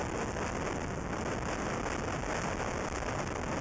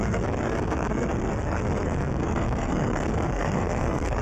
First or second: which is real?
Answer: first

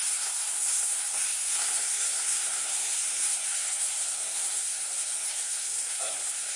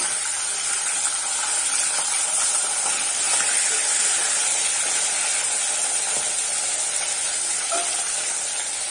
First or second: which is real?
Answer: second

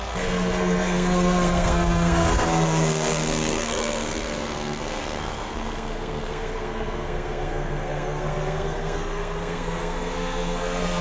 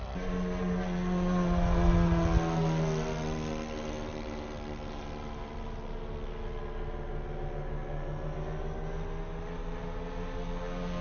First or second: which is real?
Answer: second